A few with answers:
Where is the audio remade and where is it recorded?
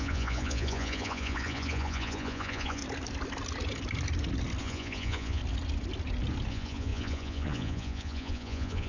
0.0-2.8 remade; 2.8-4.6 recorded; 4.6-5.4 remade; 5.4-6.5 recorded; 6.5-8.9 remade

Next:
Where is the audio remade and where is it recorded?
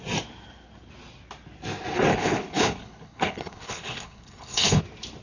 0.0-2.1 recorded; 2.1-4.8 remade; 4.8-5.2 recorded